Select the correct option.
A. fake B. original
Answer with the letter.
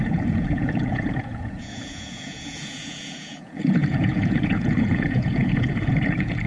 A